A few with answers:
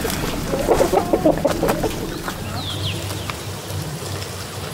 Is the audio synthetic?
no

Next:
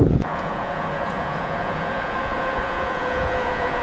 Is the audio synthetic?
yes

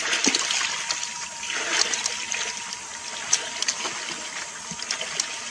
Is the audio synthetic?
no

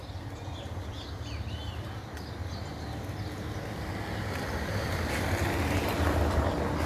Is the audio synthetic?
no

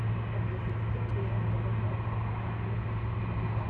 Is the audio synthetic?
no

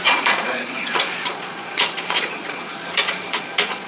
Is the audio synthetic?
yes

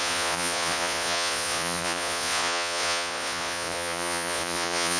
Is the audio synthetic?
yes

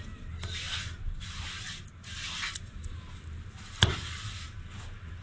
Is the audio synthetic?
no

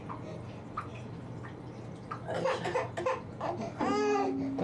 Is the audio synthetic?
no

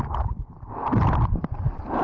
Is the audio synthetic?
no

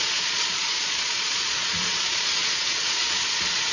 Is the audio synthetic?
yes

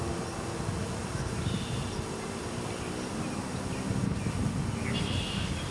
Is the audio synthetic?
no